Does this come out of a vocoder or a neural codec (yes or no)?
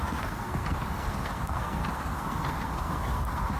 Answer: yes